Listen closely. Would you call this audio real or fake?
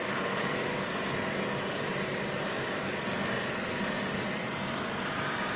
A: real